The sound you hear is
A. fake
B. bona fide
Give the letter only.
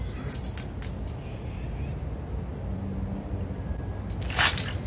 B